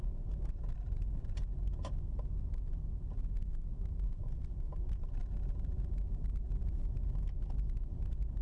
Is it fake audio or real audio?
real